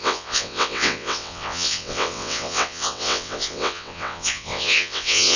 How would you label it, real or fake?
fake